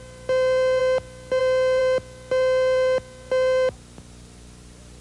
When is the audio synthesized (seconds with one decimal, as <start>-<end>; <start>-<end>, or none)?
none